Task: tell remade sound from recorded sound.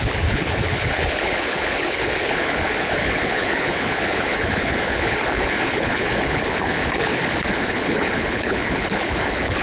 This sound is remade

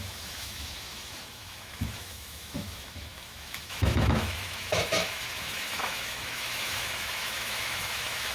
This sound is remade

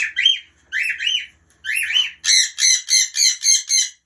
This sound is recorded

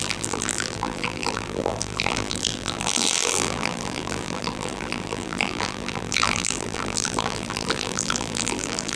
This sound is remade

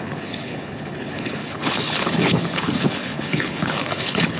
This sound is remade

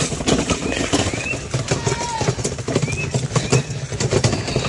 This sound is recorded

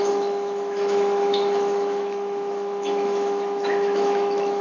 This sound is remade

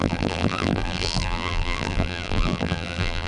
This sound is remade